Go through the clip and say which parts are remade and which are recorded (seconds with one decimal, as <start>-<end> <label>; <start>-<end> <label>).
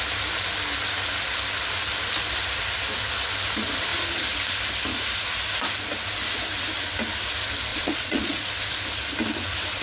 0.0-7.7 recorded; 7.7-8.5 remade; 8.5-9.8 recorded